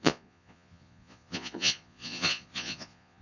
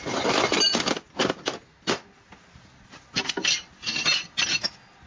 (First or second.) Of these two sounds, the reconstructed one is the first